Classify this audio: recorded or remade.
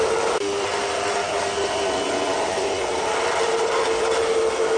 recorded